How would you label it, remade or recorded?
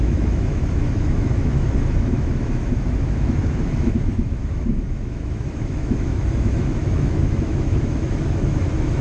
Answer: remade